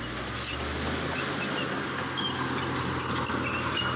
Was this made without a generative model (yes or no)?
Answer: yes